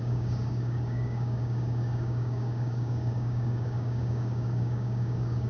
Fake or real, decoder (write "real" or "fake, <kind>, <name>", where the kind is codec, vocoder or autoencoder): fake, codec, DAC